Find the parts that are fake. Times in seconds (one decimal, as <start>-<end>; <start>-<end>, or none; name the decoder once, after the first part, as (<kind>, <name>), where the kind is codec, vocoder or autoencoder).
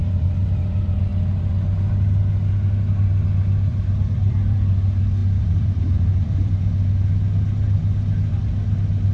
0.0-0.7 (vocoder, BigVGAN v2); 3.7-4.7; 5.2-6.5